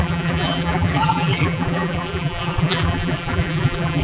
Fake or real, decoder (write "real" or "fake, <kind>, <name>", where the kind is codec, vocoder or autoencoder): fake, vocoder, BigVGAN v2